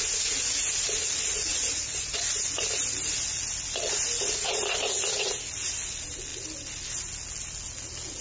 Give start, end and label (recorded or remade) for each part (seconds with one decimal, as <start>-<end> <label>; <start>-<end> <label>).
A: 0.0-1.5 recorded; 1.5-2.3 remade; 2.3-8.2 recorded